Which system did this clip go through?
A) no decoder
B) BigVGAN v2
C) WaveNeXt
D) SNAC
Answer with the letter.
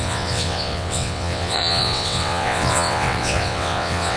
C